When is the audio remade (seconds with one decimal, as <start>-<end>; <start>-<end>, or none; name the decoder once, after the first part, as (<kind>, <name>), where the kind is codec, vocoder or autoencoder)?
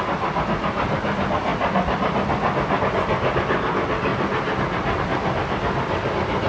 none